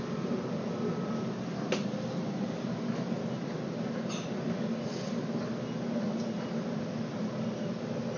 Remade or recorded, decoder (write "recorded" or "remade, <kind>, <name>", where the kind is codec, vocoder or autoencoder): recorded